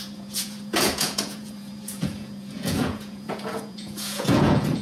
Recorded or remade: remade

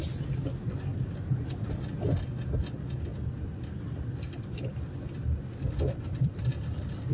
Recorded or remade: recorded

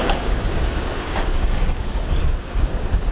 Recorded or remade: remade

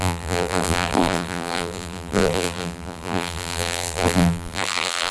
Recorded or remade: remade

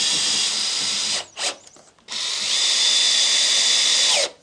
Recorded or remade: remade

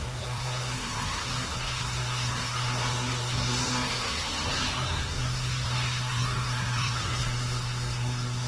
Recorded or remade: remade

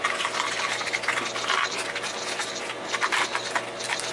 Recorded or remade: recorded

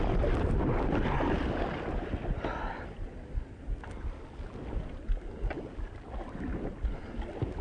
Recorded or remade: recorded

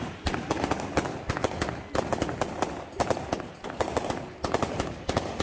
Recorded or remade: recorded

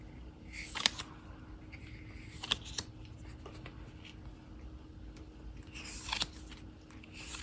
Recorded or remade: recorded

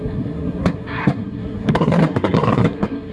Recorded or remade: remade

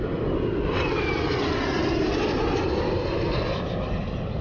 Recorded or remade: recorded